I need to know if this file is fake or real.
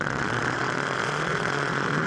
fake